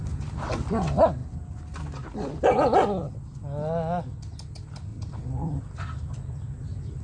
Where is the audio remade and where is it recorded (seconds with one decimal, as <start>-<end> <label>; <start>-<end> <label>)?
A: 0.0-4.9 recorded; 4.9-6.6 remade; 6.6-7.0 recorded